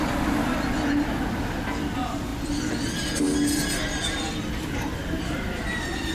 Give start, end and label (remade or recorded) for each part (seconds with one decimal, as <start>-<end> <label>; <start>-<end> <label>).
0.0-6.1 recorded